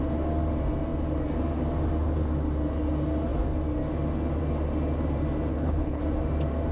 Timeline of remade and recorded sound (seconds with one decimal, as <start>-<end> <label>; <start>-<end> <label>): 0.0-5.5 recorded; 5.5-6.0 remade; 6.0-6.7 recorded